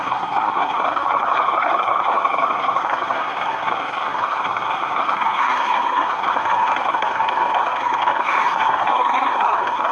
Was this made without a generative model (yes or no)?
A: no